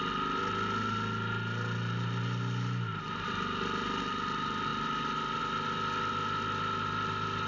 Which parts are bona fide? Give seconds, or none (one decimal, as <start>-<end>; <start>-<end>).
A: 0.0-7.5